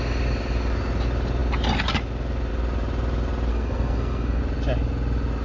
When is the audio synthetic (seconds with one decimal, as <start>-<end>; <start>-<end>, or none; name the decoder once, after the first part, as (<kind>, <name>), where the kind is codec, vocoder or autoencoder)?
3.5-4.4 (codec, SNAC)